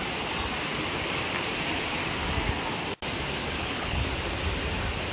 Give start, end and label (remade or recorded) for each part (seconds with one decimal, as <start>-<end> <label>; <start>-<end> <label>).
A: 0.0-3.6 recorded; 3.6-4.1 remade; 4.1-5.1 recorded